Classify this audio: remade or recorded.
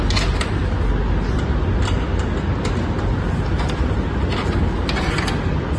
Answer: recorded